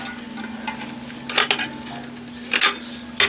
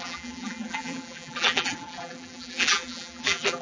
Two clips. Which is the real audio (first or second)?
first